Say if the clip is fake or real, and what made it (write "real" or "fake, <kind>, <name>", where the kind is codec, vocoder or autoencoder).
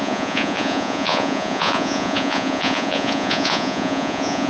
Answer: fake, vocoder, Vocos